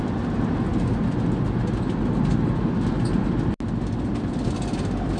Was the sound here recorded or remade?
recorded